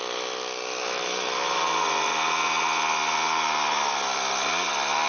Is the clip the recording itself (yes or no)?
yes